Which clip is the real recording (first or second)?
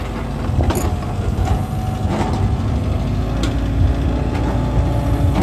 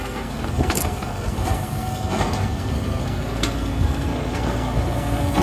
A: first